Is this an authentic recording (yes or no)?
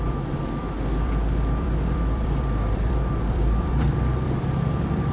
no